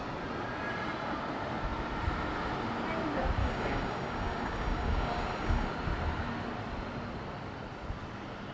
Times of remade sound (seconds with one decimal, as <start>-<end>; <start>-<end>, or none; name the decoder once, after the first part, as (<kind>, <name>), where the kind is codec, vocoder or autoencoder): 3.4-5.7 (codec, DAC)

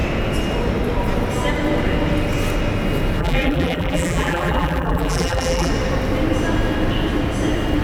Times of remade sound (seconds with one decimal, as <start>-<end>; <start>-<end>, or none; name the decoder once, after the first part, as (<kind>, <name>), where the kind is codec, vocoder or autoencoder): 3.2-5.7 (vocoder, BigVGAN v2)

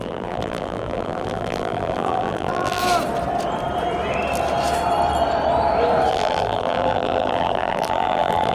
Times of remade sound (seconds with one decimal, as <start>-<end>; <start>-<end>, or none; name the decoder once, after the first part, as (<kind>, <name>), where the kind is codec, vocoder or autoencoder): 0.0-2.8 (vocoder, BigVGAN v2); 6.1-8.5

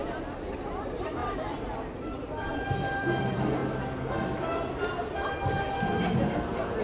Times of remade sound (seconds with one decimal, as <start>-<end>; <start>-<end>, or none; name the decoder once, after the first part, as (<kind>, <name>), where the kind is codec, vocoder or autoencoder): none

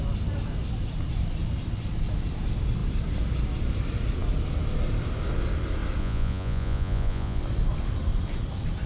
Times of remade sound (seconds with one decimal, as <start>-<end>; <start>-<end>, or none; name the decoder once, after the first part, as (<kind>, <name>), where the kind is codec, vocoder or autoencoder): 6.0-7.4 (vocoder, Vocos)

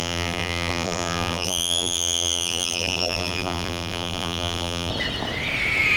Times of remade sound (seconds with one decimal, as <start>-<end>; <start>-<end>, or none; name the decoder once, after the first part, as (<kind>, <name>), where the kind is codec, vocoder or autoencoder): 0.0-4.9 (vocoder, BigVGAN v2)

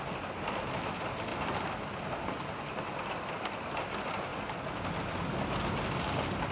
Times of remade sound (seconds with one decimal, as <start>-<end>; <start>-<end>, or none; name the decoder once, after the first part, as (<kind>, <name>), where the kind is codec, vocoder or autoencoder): none

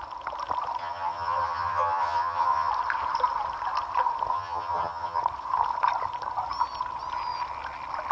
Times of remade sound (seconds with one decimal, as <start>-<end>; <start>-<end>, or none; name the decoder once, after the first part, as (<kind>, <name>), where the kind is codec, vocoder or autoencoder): 0.8-2.7 (vocoder, HiFi-GAN); 4.3-5.2